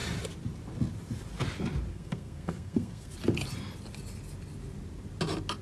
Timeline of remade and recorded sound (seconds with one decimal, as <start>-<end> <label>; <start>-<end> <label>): 0.0-1.9 recorded; 1.9-3.1 remade; 3.1-5.6 recorded

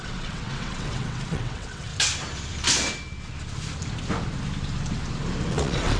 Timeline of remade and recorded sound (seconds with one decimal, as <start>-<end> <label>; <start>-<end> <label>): 0.0-1.9 remade; 1.9-5.5 recorded; 5.5-6.0 remade